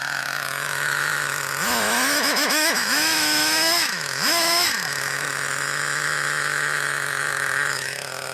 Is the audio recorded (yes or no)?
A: no